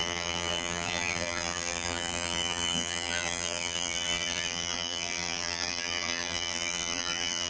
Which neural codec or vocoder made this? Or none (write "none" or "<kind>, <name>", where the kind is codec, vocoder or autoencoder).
vocoder, BigVGAN v2